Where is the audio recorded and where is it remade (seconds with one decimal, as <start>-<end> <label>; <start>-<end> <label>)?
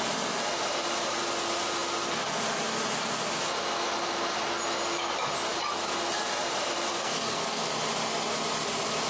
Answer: 0.0-6.9 recorded; 6.9-7.6 remade; 7.6-9.1 recorded